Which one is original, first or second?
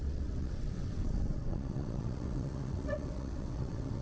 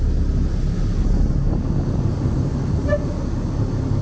second